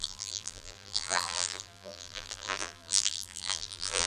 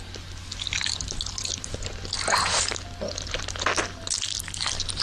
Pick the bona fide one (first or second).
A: second